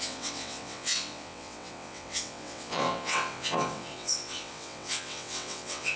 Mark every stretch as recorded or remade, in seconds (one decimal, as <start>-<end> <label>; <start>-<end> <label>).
0.0-6.0 remade